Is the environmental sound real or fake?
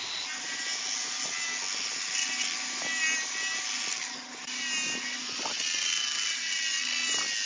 real